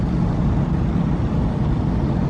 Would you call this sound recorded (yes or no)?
yes